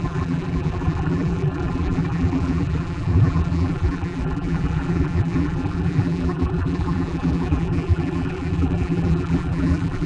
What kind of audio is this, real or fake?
fake